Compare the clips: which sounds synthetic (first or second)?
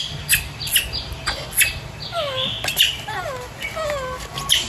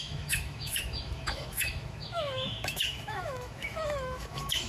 second